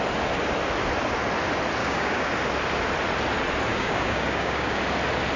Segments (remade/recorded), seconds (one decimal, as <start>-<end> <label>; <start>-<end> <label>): 0.0-1.8 recorded; 1.8-2.3 remade; 2.3-3.7 recorded; 3.7-4.8 remade; 4.8-5.4 recorded